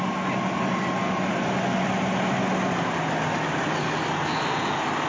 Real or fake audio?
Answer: real